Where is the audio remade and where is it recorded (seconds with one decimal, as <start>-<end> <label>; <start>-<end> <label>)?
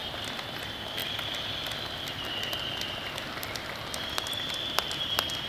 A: 0.0-5.5 recorded